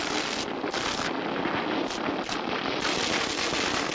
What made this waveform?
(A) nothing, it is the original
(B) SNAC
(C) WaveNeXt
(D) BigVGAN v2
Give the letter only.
A